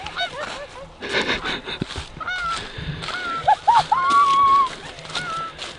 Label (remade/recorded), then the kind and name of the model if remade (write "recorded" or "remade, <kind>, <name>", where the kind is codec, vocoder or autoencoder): recorded